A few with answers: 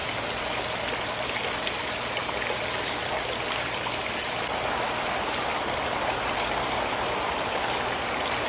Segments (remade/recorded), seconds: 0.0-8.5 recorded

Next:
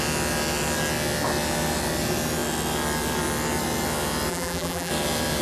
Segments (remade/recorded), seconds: 0.0-4.3 recorded; 4.3-4.9 remade; 4.9-5.4 recorded

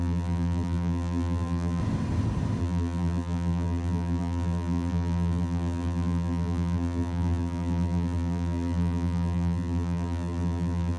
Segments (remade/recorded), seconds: 0.0-1.8 remade; 1.8-2.6 recorded; 2.6-11.0 remade